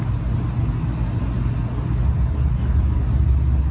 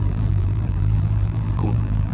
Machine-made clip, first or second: second